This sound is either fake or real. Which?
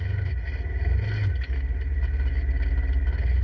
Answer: real